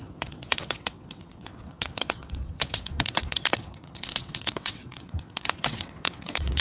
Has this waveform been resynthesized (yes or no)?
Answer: yes